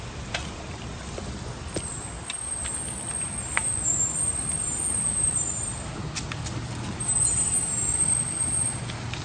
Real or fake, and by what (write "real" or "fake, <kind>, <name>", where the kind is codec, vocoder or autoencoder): real